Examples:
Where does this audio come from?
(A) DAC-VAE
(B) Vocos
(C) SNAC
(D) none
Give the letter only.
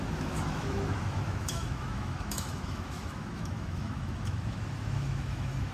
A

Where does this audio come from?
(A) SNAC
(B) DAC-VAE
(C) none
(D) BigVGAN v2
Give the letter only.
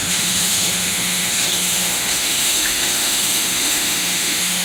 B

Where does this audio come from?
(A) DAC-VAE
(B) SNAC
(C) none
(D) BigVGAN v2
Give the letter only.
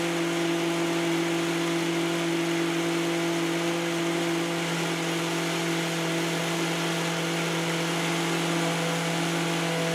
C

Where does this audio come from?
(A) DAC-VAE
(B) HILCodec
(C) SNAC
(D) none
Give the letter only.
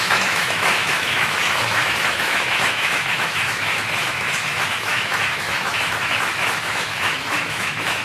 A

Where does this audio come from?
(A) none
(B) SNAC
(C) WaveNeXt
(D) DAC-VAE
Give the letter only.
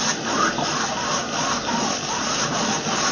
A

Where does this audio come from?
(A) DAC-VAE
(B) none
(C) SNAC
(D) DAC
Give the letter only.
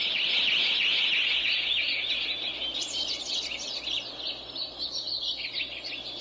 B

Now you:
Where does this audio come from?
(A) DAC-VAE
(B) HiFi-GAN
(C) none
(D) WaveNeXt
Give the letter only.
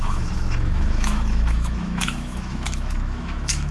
A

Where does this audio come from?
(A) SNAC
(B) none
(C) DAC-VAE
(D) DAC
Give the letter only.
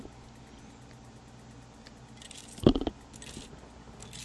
B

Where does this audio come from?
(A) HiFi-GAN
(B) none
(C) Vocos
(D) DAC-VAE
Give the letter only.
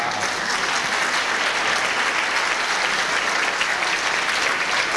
B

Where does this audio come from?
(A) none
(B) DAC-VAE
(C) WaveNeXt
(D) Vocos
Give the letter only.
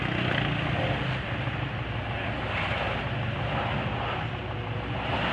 A